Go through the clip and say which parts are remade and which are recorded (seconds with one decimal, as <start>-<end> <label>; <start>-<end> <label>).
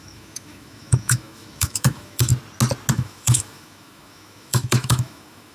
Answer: 0.0-2.3 remade; 2.3-2.9 recorded; 2.9-5.5 remade